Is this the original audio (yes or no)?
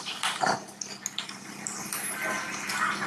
yes